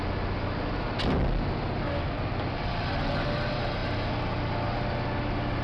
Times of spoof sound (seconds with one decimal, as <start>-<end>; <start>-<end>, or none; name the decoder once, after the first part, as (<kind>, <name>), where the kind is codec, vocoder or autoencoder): none